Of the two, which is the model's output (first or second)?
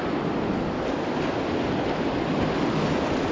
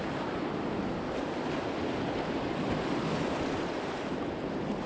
second